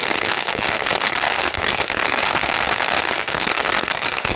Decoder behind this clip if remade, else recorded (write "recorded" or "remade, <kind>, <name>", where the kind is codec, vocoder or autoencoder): remade, codec, SNAC